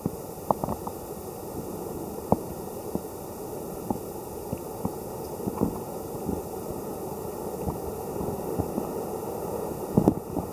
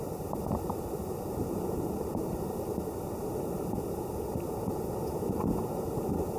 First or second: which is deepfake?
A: second